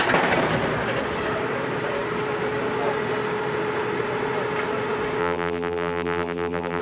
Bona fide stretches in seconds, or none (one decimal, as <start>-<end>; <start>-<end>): 0.0-5.2